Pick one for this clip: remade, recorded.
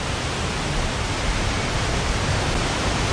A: recorded